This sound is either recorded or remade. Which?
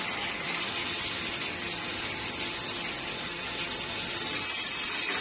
recorded